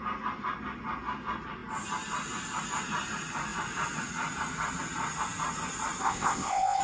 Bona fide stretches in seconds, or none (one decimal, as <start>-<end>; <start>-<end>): 0.0-6.0